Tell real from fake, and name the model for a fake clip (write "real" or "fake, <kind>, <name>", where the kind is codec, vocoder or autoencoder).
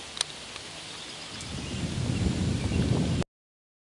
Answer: real